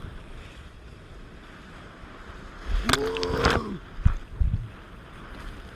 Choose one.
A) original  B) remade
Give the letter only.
A